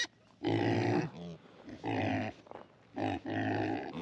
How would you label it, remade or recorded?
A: recorded